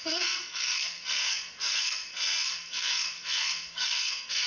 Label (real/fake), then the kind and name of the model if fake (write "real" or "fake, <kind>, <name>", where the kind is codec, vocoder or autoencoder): fake, codec, SNAC